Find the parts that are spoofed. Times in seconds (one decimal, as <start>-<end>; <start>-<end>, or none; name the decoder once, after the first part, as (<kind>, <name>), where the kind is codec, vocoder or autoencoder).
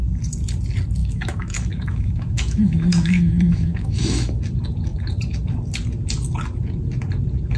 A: 1.0-4.4 (autoencoder, DAC-VAE)